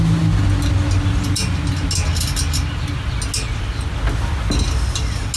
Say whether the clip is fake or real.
real